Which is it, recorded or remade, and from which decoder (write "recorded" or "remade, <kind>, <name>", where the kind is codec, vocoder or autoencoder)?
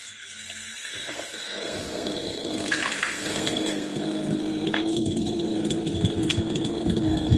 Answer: remade, codec, SNAC